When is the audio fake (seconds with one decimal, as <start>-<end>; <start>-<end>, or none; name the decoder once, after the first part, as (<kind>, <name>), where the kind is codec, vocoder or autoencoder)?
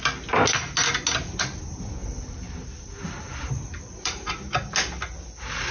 2.0-4.3 (vocoder, BigVGAN v2)